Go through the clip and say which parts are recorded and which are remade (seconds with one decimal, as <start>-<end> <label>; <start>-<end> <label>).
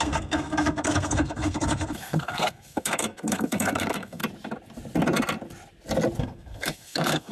0.0-4.2 remade; 4.2-6.2 recorded; 6.2-7.3 remade